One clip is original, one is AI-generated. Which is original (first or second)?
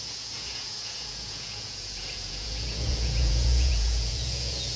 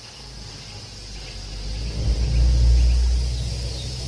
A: second